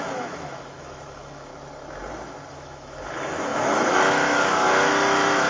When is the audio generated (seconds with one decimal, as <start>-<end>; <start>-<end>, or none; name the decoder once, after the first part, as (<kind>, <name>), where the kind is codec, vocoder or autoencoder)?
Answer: 0.0-1.5 (autoencoder, DAC-VAE); 2.5-5.5